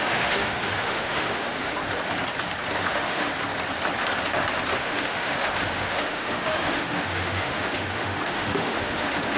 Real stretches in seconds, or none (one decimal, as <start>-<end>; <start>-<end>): 1.8-2.9; 3.3-4.8